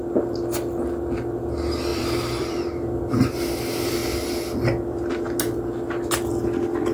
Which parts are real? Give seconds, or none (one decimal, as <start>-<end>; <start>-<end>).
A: 0.0-1.9; 3.5-6.9